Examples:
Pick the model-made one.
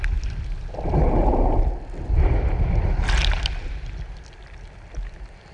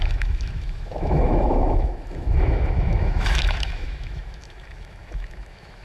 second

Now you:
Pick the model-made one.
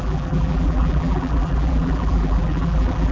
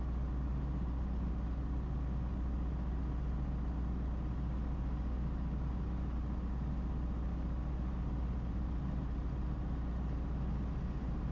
first